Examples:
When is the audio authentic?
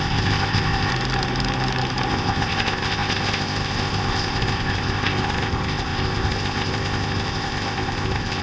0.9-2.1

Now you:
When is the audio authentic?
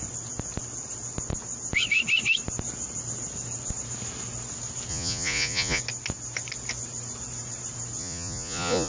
0.0-4.9; 5.8-8.0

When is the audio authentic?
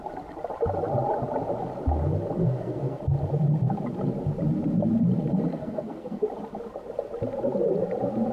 0.0-2.4; 3.0-5.5; 6.2-8.3